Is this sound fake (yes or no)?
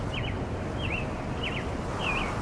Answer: no